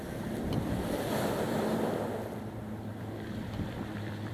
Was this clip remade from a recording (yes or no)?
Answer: yes